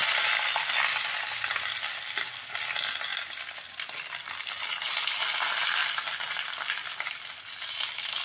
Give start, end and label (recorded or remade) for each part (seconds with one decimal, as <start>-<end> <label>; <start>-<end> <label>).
0.0-5.8 recorded; 5.8-7.1 remade; 7.1-8.2 recorded